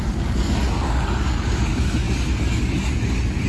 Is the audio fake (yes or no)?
yes